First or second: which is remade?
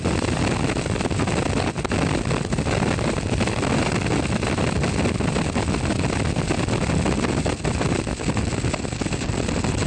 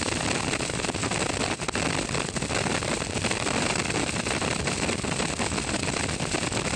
second